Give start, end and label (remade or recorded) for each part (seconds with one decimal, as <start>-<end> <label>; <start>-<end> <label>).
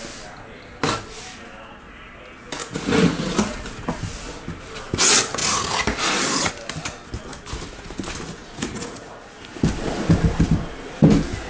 0.0-2.6 recorded; 2.6-3.3 remade; 3.3-8.4 recorded; 8.4-9.2 remade; 9.2-11.5 recorded